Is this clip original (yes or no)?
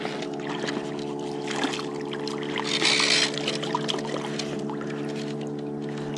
yes